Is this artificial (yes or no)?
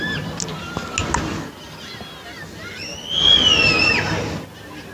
no